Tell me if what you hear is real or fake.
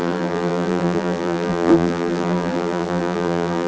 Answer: fake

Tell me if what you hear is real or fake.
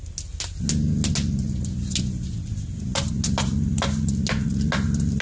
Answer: real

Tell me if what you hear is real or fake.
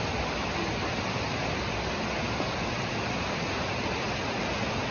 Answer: real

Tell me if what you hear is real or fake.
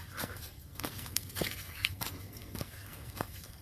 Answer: fake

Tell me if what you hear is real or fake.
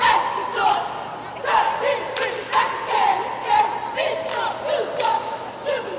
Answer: real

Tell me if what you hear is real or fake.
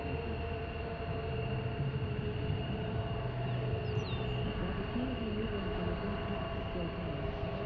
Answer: real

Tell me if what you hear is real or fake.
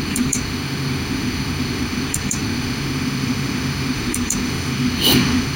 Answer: fake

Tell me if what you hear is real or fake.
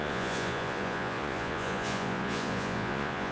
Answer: fake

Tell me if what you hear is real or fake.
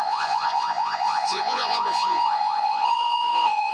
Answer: fake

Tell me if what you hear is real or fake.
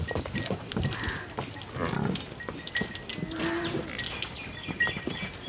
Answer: real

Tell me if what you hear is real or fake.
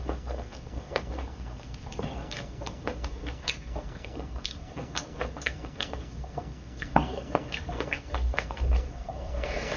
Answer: fake